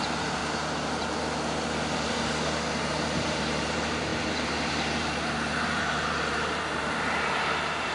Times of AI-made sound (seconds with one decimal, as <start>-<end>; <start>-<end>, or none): 0.0-0.4; 2.7-7.9